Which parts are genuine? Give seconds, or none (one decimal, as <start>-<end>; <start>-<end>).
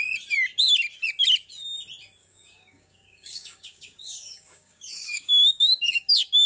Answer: 0.0-2.2; 6.1-6.5